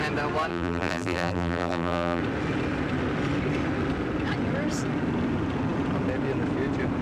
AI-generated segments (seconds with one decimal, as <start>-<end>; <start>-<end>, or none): 0.5-2.2